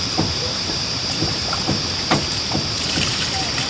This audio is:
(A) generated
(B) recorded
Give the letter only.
A